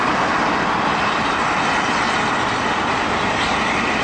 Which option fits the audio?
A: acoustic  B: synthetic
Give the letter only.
A